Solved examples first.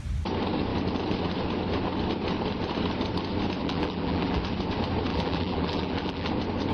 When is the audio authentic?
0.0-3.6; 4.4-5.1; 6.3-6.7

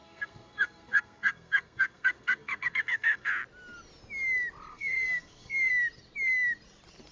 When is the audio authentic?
3.3-4.7; 5.7-7.1

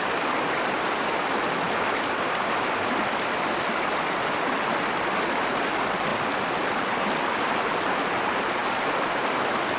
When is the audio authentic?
0.0-9.8

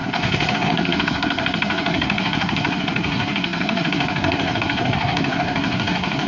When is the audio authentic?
none